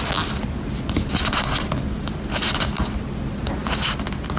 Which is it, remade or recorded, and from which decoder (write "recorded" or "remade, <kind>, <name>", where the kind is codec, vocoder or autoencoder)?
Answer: recorded